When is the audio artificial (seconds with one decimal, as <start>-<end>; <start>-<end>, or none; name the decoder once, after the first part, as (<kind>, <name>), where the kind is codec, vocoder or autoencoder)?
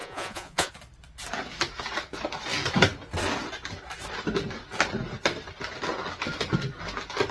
0.0-0.7 (vocoder, Vocos)